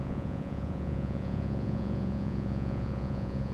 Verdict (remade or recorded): remade